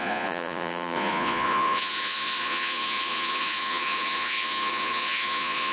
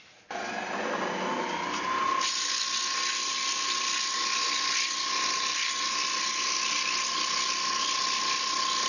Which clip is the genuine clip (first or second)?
second